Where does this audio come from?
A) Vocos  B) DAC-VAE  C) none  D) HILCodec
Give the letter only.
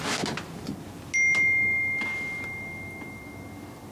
C